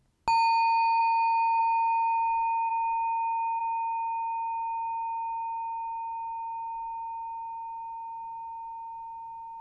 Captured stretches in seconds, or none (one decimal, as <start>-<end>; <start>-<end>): 0.0-9.6